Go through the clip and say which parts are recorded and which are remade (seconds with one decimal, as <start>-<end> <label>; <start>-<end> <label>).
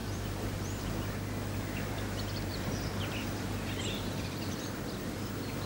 0.0-0.9 remade; 0.9-2.5 recorded; 2.5-5.3 remade; 5.3-5.7 recorded